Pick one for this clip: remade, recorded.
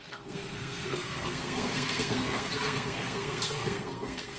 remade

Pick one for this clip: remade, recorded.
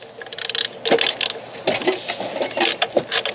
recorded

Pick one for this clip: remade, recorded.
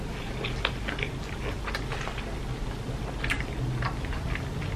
recorded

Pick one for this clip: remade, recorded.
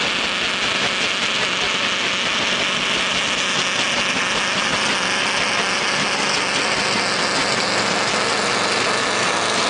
recorded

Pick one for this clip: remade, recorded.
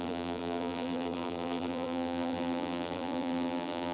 remade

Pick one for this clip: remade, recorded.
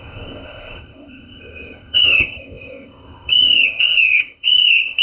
remade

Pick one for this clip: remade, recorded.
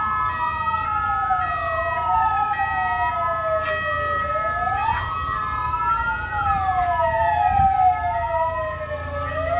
recorded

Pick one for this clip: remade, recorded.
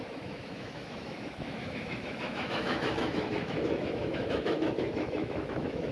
remade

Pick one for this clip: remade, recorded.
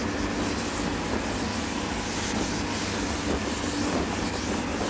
recorded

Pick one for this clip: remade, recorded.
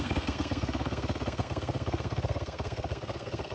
remade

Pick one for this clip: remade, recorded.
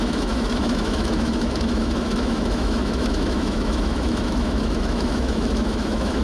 remade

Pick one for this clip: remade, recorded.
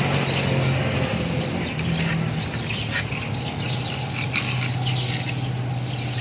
recorded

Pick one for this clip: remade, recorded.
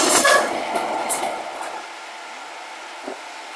recorded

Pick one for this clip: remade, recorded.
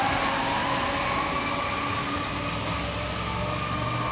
recorded